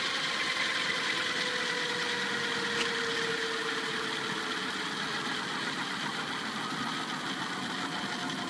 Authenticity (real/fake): real